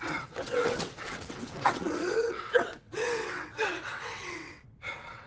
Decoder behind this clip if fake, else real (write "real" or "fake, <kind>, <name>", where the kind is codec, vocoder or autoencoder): fake, vocoder, WaveNeXt